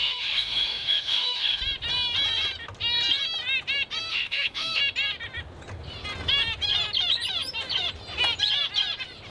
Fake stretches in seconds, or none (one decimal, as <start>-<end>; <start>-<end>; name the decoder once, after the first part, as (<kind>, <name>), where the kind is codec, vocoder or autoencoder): 0.0-1.6 (autoencoder, DAC-VAE); 4.1-4.8